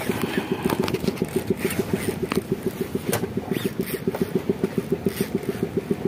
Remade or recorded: recorded